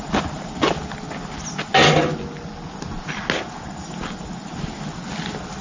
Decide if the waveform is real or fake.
real